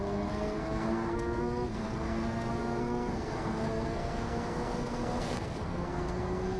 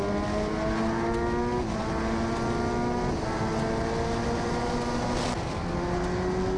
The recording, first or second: second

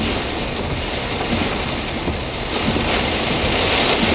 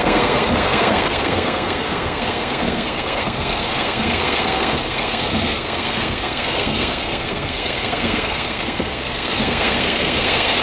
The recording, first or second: first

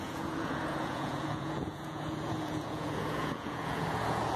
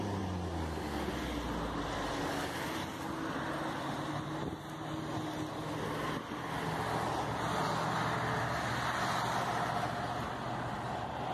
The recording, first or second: second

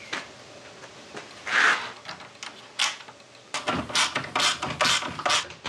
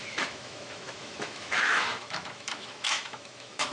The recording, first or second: first